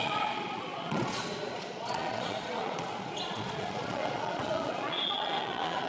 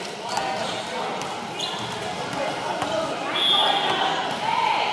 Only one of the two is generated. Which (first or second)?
first